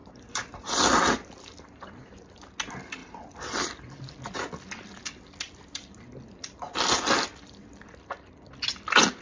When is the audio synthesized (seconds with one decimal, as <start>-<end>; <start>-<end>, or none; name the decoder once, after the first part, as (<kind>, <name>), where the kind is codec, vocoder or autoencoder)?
0.0-0.7 (vocoder, BigVGAN v2)

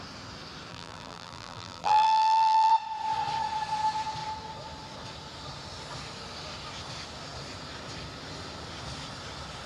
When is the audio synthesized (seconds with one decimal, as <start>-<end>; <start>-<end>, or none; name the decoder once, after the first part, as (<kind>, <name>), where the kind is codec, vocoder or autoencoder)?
0.7-2.7 (vocoder, BigVGAN v2)

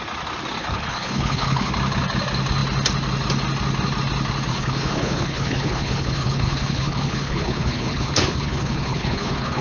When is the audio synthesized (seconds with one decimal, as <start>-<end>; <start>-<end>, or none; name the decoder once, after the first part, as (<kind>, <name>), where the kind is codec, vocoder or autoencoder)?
0.6-1.7 (codec, HILCodec); 4.5-9.6

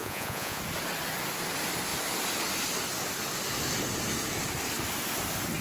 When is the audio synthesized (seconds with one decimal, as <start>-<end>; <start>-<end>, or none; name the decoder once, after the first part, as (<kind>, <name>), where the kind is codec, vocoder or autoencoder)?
0.0-0.6 (vocoder, Vocos)